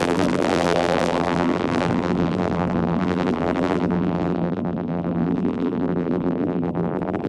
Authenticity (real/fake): fake